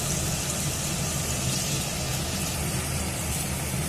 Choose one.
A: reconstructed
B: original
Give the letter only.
B